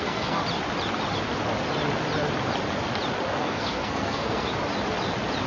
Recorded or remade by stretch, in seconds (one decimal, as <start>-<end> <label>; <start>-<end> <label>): 0.0-0.4 remade; 0.4-3.4 recorded; 3.4-4.5 remade; 4.5-5.5 recorded

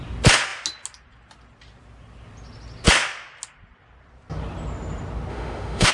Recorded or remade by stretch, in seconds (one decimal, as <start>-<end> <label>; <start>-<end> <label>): 0.0-5.3 recorded; 5.3-5.9 remade

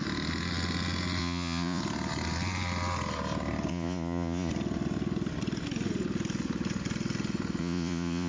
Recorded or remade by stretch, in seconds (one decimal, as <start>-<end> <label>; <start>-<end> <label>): 0.0-1.2 recorded; 1.2-1.8 remade; 1.8-3.7 recorded; 3.7-4.5 remade; 4.5-7.6 recorded; 7.6-8.3 remade

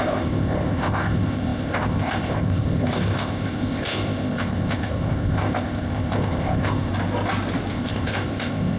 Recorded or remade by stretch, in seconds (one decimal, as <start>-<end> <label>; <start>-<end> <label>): 0.0-6.9 remade; 6.9-7.7 recorded; 7.7-8.8 remade

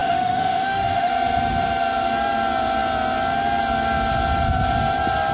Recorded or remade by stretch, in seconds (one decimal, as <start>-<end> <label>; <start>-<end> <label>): 0.0-1.1 remade; 1.1-5.3 recorded

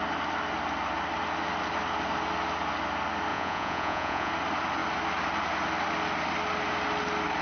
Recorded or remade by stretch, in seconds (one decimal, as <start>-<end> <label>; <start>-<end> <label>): 0.0-3.3 recorded; 3.3-4.3 remade; 4.3-7.4 recorded

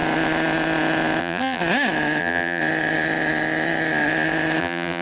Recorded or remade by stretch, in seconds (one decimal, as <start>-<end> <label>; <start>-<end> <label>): 0.0-1.2 recorded; 1.2-1.6 remade; 1.6-2.2 recorded; 2.2-2.6 remade; 2.6-4.6 recorded; 4.6-5.0 remade